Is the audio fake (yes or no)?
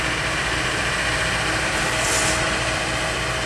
no